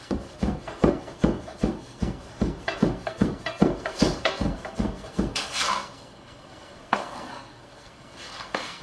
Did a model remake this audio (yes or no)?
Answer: yes